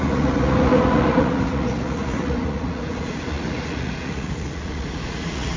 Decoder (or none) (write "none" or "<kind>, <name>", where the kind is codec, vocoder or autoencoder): vocoder, Vocos